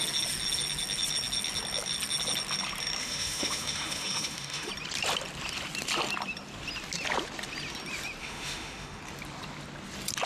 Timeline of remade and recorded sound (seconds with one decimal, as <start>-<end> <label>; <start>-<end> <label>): 0.0-3.0 recorded; 3.0-4.7 remade; 4.7-8.2 recorded; 8.2-9.0 remade; 9.0-10.3 recorded

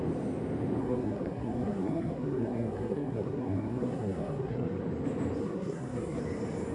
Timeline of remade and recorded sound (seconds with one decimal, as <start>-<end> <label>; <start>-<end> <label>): 0.0-0.8 recorded; 0.8-4.8 remade; 4.8-5.4 recorded; 5.4-6.2 remade; 6.2-6.7 recorded

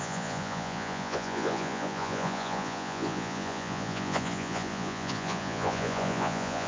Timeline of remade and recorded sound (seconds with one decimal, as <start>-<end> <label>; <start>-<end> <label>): 0.0-6.7 remade

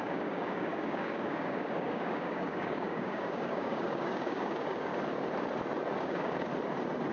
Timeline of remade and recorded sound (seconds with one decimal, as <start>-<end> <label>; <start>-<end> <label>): 0.0-4.9 remade; 4.9-6.0 recorded; 6.0-6.5 remade; 6.5-7.1 recorded

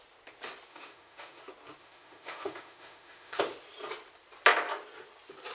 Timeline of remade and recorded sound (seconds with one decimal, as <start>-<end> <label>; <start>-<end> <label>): 0.0-0.7 recorded; 0.7-1.4 remade; 1.4-1.8 recorded; 1.8-3.4 remade; 3.4-5.5 recorded

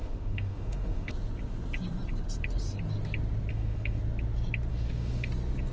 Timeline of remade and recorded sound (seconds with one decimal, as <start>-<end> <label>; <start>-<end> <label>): 0.0-1.1 remade; 1.1-3.5 recorded; 3.5-4.0 remade; 4.0-4.7 recorded; 4.7-5.3 remade; 5.3-5.7 recorded

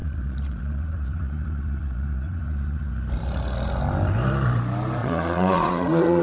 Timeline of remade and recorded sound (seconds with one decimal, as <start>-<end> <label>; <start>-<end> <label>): 0.0-2.9 remade; 2.9-5.0 recorded; 5.0-6.2 remade

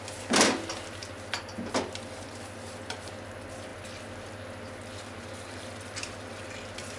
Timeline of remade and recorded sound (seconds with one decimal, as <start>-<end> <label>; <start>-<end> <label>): 0.0-7.0 recorded